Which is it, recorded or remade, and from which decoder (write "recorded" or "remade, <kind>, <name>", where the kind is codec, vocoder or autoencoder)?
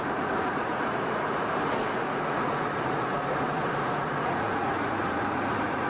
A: remade, vocoder, Vocos